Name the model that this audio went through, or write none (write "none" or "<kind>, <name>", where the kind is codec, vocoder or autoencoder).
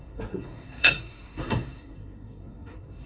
codec, SNAC